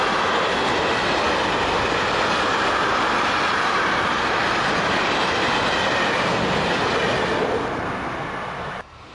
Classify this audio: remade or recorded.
recorded